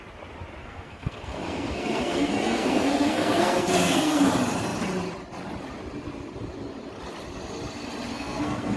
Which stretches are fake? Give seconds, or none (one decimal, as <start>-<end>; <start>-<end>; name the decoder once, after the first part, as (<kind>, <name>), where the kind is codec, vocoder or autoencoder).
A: 0.6-4.3 (codec, SNAC); 8.1-8.8